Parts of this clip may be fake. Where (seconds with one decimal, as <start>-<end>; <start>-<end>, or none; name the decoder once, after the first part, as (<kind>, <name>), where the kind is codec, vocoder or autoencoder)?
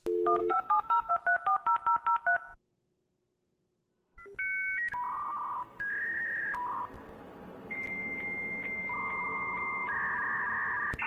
0.4-1.1 (autoencoder, DAC-VAE)